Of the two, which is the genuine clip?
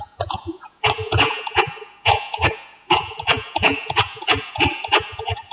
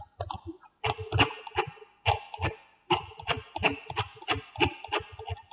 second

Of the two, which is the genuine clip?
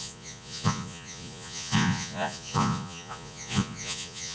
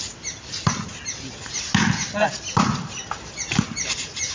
second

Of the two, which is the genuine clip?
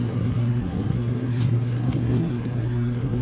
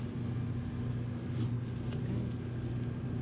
second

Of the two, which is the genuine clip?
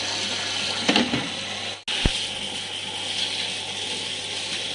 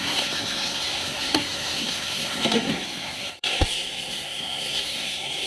first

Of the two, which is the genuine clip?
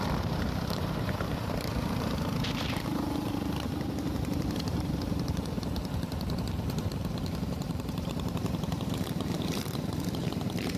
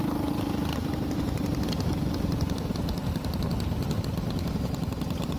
second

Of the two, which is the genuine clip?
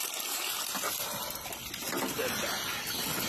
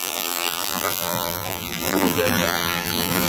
first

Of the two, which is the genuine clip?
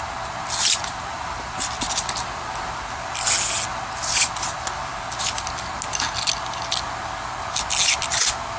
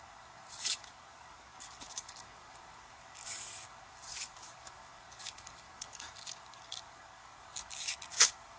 first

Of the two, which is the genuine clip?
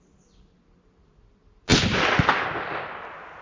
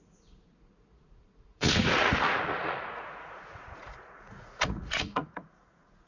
first